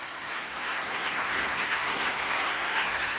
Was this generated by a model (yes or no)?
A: yes